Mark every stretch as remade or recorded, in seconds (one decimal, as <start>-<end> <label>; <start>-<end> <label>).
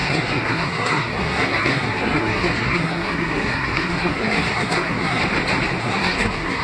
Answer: 0.0-5.2 remade; 5.2-5.8 recorded; 5.8-6.6 remade